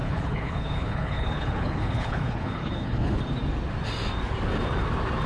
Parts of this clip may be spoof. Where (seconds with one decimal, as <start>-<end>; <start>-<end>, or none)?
0.0-3.2